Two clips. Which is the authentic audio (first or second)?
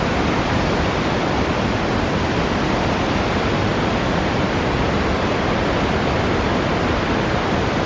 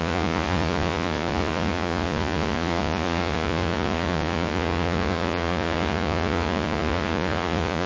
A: first